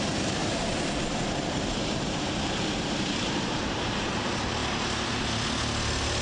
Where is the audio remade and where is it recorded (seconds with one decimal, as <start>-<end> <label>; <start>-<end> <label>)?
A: 0.0-0.4 recorded; 0.4-4.1 remade; 4.1-4.6 recorded; 4.6-5.1 remade; 5.1-6.2 recorded